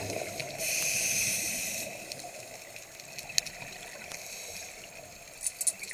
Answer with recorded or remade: recorded